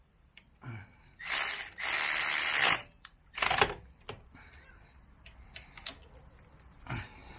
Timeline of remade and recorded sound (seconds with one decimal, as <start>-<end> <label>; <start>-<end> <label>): 0.0-7.4 recorded